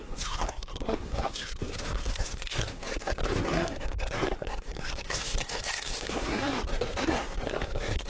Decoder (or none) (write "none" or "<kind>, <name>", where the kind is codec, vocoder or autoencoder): codec, SNAC